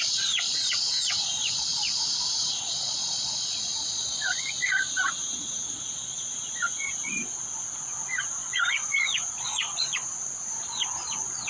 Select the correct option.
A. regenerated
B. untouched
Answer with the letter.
A